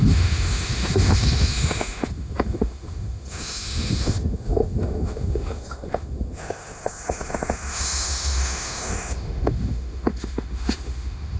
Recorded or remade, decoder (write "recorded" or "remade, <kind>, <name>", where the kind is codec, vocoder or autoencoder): remade, autoencoder, DAC-VAE